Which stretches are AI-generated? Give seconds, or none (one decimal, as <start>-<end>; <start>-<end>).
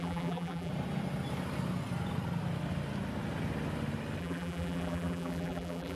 0.0-0.7; 4.2-5.9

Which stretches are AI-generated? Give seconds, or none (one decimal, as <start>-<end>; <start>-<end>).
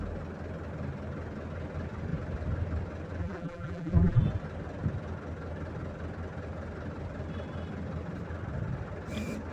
3.2-4.2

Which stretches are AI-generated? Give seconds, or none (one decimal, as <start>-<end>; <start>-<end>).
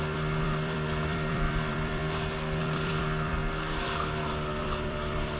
0.0-2.0; 2.6-3.4; 4.6-5.4